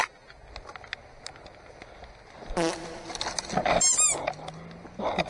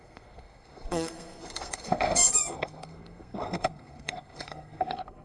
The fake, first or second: second